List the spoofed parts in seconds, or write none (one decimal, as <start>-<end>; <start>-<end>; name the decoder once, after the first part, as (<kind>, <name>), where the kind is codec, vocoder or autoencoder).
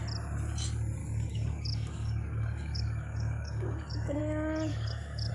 1.0-4.2 (codec, DAC); 4.7-5.3